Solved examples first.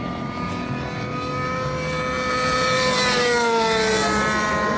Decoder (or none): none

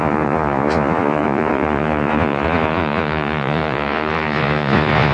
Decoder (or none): vocoder, Vocos